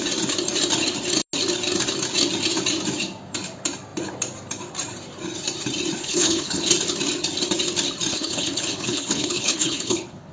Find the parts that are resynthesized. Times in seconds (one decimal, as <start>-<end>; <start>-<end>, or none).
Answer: 6.0-6.7; 8.1-10.3